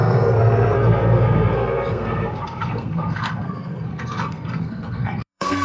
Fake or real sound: fake